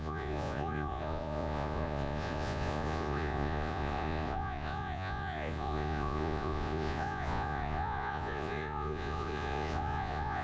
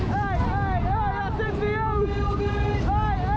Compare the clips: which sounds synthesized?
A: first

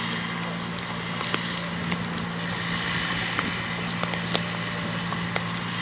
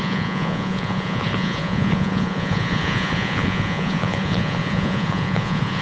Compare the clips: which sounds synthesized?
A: second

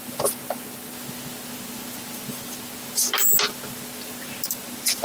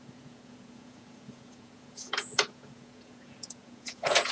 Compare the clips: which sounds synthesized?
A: second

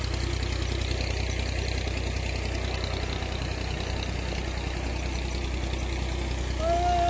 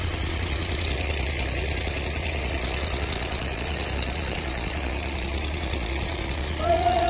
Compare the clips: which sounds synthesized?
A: second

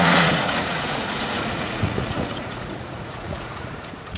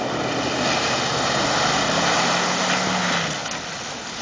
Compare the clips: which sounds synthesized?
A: first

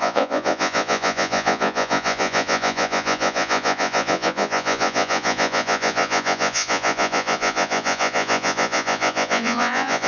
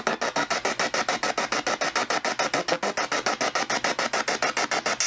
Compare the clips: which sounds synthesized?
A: first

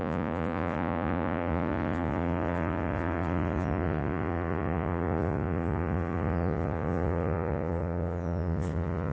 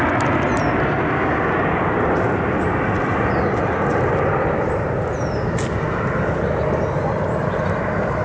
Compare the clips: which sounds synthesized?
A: first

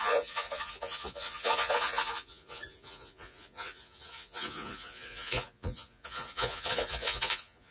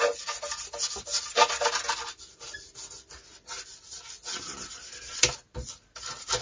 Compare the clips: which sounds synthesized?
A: first